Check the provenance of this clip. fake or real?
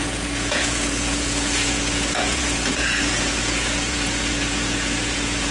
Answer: fake